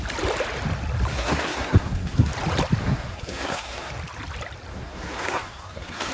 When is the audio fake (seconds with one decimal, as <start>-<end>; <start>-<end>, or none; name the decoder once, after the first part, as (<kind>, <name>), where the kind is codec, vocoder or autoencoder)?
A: 1.1-2.3 (codec, SNAC); 2.8-3.9; 4.7-6.1